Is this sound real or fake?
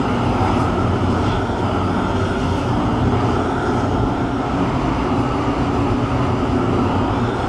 real